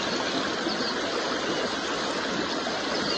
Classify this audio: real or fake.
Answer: real